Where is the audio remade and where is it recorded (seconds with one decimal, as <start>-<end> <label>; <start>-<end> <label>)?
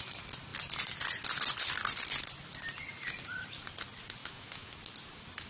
0.0-4.2 recorded; 4.2-4.8 remade; 4.8-5.5 recorded